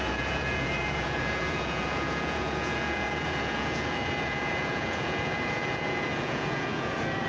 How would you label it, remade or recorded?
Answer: remade